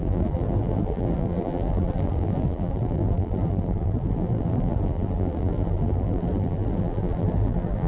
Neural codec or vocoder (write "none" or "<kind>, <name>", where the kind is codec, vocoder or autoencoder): vocoder, BigVGAN v2